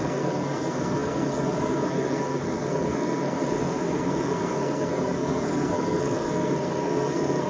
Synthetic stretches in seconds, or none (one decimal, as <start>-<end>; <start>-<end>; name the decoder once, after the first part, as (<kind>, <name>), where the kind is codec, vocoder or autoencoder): 0.0-7.5 (codec, SNAC)